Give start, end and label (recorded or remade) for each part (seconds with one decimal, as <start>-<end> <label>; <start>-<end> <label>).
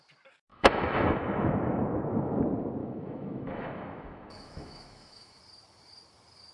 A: 0.0-0.5 recorded; 0.5-2.4 remade; 2.4-2.8 recorded; 2.8-5.4 remade; 5.4-6.5 recorded